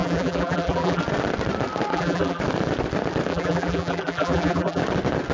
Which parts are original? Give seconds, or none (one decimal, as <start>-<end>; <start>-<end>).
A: 1.0-1.9; 2.4-3.3; 4.8-5.3